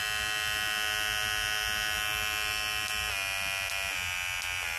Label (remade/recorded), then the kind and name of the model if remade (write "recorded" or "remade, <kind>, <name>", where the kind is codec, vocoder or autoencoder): recorded